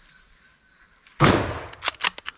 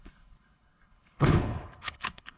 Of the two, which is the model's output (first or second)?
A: second